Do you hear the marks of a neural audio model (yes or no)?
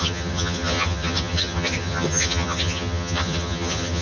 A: yes